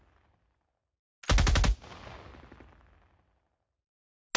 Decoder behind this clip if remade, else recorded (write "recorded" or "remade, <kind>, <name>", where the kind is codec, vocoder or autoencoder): recorded